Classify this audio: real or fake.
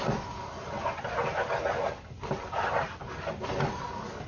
real